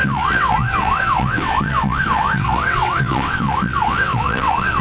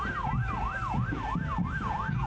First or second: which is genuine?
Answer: second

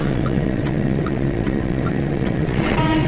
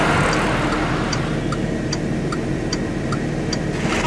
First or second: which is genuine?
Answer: second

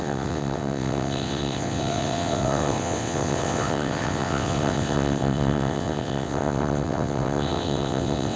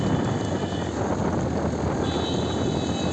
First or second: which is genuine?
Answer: second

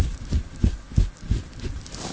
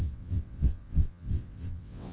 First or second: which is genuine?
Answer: first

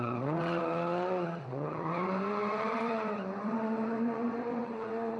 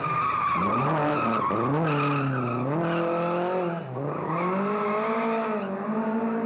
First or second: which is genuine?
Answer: second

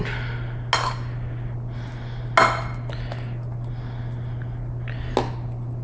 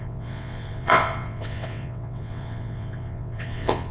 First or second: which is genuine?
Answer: first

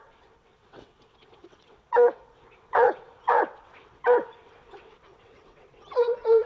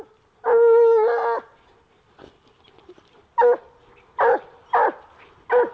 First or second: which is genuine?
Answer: second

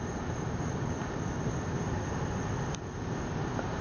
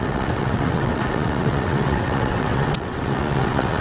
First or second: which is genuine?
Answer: first